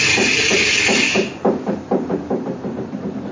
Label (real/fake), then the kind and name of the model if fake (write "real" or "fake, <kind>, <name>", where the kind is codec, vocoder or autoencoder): fake, vocoder, BigVGAN v2